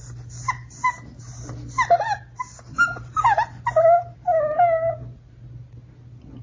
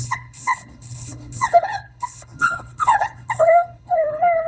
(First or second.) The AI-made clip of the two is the second